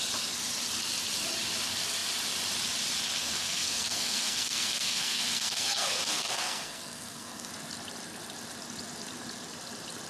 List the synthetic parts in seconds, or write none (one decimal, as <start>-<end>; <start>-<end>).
3.2-7.5